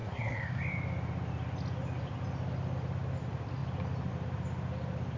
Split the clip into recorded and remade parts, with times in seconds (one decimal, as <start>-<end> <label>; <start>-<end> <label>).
0.0-0.6 remade; 0.6-5.2 recorded